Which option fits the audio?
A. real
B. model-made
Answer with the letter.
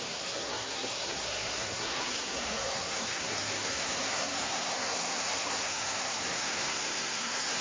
B